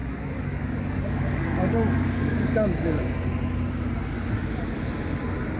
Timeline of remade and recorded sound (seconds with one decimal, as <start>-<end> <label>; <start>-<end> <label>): 0.0-3.0 remade; 3.0-5.6 recorded